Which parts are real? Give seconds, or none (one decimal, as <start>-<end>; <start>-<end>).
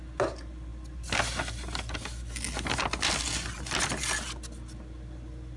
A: 0.0-5.6